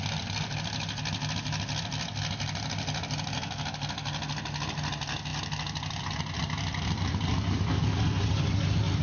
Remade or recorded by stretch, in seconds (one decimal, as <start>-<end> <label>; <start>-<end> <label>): 0.0-9.0 recorded